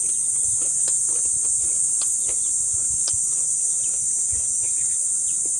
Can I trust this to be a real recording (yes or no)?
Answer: yes